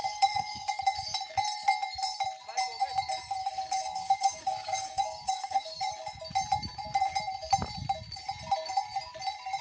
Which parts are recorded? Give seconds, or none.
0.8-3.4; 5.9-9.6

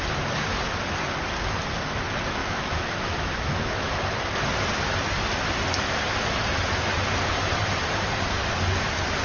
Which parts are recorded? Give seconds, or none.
0.0-2.4; 3.9-9.2

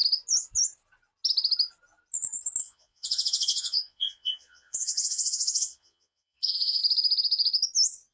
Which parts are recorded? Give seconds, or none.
0.0-2.6; 6.8-8.1